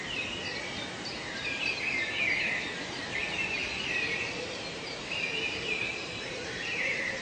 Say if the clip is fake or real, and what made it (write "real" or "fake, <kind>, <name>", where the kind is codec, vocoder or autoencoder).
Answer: fake, vocoder, BigVGAN v2